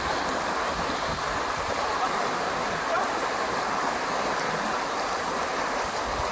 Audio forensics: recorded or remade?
recorded